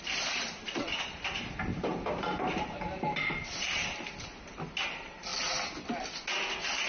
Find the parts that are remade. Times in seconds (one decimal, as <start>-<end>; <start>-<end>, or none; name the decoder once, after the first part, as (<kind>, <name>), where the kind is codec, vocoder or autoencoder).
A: none